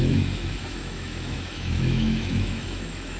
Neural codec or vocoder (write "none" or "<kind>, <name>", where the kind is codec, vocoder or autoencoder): autoencoder, DAC-VAE